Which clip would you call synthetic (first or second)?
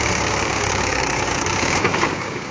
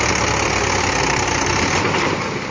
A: first